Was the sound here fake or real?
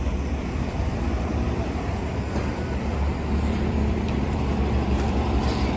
fake